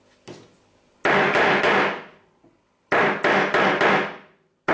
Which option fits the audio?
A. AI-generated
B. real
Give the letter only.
B